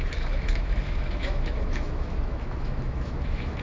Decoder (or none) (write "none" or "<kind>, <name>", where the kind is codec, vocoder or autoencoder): autoencoder, DAC-VAE